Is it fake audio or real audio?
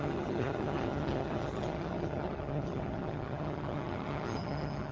fake